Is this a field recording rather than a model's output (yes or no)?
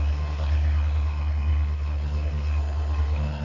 no